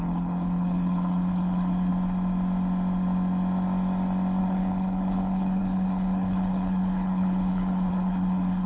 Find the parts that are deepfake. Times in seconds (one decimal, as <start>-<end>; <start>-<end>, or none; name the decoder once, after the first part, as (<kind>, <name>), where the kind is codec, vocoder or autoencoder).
0.0-1.9 (codec, HILCodec); 4.4-8.7